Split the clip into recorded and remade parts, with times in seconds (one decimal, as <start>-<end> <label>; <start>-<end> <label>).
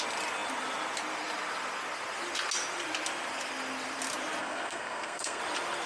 0.0-4.4 recorded; 4.4-5.4 remade; 5.4-5.9 recorded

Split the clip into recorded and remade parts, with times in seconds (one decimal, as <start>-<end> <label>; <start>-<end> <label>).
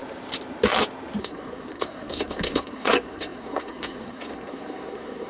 0.0-1.2 recorded; 1.2-5.3 remade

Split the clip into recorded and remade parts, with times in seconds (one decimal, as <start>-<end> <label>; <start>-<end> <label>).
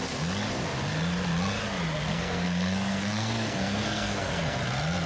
0.0-2.1 recorded; 2.1-4.6 remade; 4.6-5.1 recorded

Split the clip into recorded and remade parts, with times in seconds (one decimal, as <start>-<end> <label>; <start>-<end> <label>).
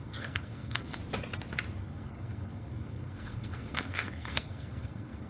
0.0-1.0 remade; 1.0-1.8 recorded; 1.8-5.3 remade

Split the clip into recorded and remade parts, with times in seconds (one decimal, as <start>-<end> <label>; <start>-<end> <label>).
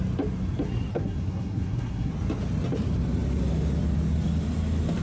0.0-0.9 recorded; 0.9-2.1 remade; 2.1-5.0 recorded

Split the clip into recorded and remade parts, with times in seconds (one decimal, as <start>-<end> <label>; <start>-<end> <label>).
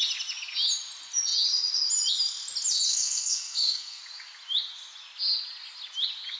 0.0-2.9 recorded; 2.9-4.0 remade; 4.0-6.4 recorded